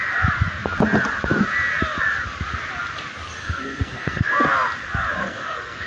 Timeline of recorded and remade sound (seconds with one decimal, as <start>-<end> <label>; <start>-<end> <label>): 0.0-3.4 recorded; 3.4-4.3 remade; 4.3-5.2 recorded; 5.2-5.9 remade